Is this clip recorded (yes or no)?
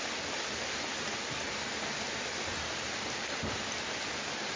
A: yes